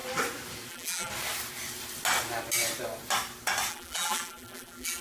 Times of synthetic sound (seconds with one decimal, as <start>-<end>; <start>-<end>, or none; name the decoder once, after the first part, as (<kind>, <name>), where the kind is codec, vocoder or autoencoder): 0.7-1.1 (vocoder, BigVGAN v2); 3.7-5.0